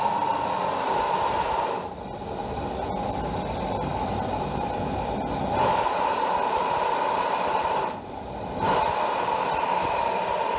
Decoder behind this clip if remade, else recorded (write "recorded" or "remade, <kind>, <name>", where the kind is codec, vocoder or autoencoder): recorded